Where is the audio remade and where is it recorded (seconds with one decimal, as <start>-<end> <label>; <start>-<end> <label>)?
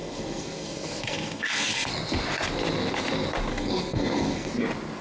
0.0-1.9 remade; 1.9-3.5 recorded; 3.5-4.5 remade; 4.5-5.0 recorded